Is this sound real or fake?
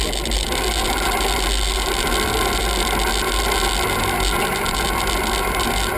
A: real